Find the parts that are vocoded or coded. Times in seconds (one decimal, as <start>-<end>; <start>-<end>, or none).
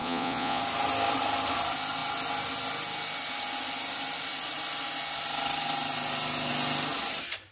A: 0.0-0.6